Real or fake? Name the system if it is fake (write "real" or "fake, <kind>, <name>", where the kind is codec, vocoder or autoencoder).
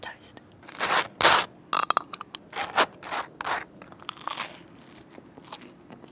real